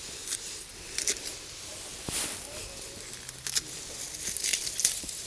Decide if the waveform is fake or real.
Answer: real